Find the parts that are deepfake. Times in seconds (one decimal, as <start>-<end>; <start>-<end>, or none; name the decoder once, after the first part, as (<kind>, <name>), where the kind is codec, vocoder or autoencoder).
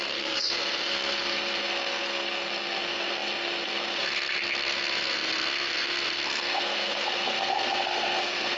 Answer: 0.0-8.6 (codec, SNAC)